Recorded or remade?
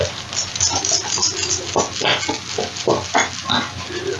recorded